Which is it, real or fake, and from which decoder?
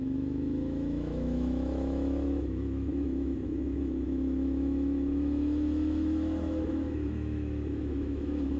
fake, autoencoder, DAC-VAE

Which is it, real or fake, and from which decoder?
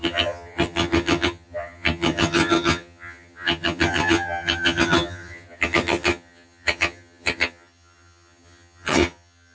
fake, vocoder, HiFi-GAN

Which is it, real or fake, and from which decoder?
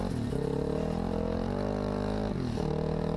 real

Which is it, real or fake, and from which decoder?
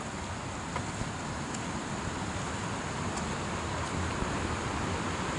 real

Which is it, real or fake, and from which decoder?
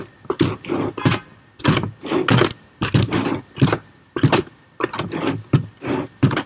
real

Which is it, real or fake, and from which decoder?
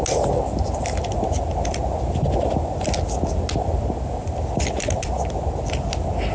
real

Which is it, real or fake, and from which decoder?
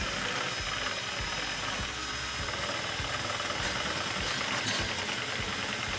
real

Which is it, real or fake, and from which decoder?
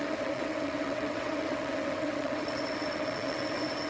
fake, vocoder, WaveNeXt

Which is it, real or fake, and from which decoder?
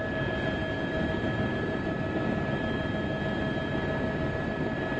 real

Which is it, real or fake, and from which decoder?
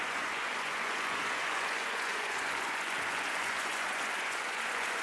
fake, vocoder, Vocos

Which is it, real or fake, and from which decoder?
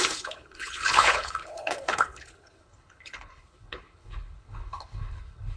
fake, codec, HILCodec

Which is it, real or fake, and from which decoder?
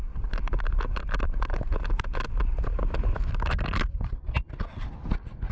real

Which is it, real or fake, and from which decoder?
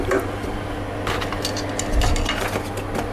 real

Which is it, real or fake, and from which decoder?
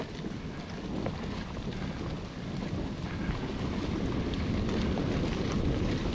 real